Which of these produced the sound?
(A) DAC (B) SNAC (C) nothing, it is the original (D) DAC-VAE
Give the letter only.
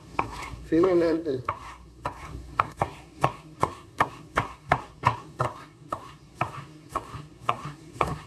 B